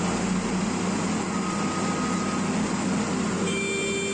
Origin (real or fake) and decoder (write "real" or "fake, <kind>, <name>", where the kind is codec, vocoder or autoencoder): real